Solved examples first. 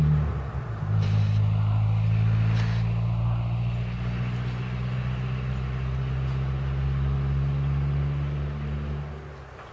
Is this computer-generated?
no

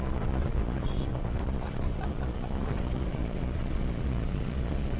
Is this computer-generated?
yes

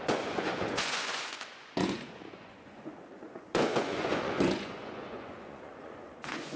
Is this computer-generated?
yes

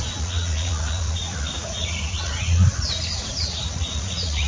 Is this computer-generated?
yes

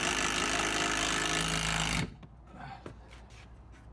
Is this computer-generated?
no